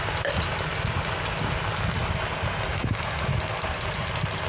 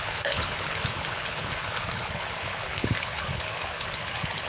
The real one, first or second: first